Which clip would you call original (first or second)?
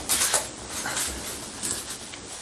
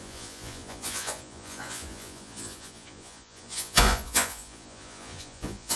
first